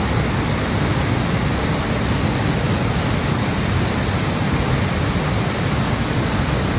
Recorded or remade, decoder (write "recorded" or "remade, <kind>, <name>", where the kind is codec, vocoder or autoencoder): recorded